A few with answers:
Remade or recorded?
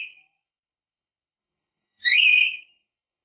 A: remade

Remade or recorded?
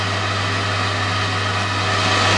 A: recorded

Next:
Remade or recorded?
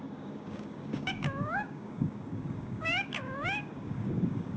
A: remade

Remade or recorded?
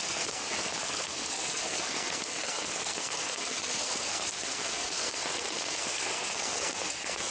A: remade